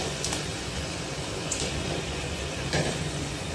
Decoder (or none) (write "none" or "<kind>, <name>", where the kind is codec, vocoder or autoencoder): vocoder, Vocos